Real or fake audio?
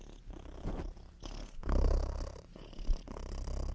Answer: real